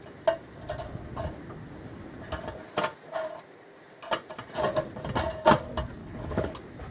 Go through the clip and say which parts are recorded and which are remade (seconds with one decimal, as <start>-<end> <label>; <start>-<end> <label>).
0.0-6.0 recorded; 6.0-6.5 remade; 6.5-6.9 recorded